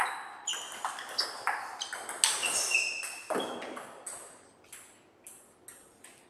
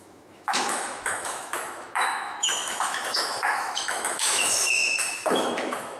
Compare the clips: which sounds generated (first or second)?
second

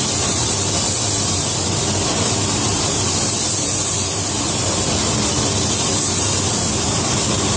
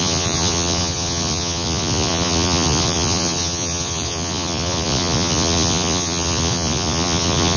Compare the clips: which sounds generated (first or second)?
second